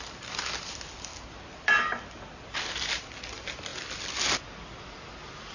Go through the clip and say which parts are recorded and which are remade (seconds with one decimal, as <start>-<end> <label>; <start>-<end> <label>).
0.0-5.5 recorded